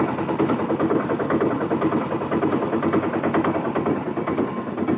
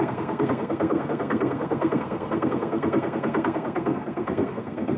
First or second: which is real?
first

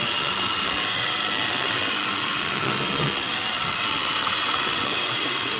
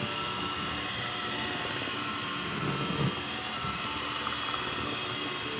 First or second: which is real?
second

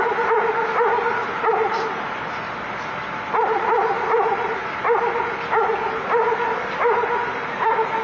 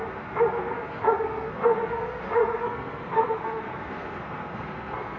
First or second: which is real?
first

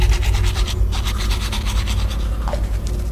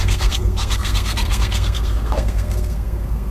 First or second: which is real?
first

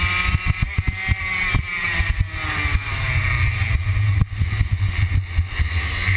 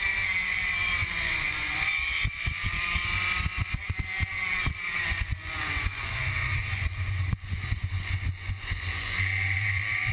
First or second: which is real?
first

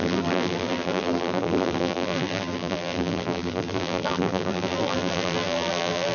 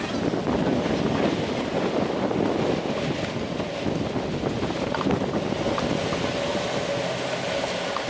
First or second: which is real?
second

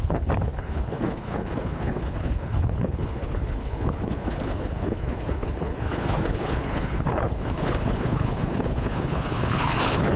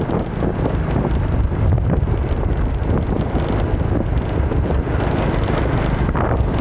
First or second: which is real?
second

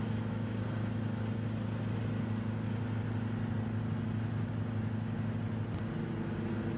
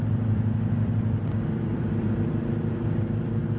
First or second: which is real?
first